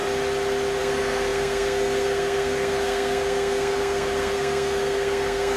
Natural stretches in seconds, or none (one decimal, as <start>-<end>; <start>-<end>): 0.0-0.8